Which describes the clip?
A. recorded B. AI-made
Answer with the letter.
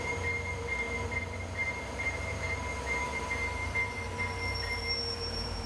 B